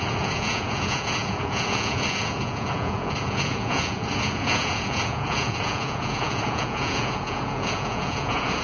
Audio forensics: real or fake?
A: fake